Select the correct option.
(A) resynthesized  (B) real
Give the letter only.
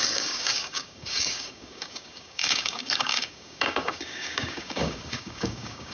A